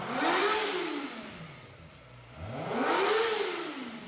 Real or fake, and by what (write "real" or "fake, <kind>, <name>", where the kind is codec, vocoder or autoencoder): real